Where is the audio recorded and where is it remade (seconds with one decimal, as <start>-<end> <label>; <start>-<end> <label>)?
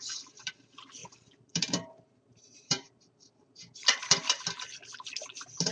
0.0-1.0 recorded; 1.0-4.4 remade; 4.4-5.7 recorded